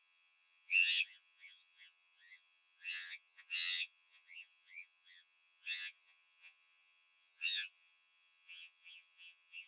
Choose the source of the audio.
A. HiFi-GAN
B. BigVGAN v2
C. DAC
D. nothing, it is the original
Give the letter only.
A